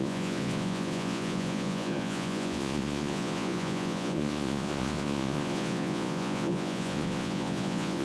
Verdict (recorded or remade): remade